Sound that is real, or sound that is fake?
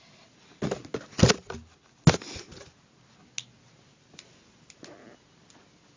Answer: real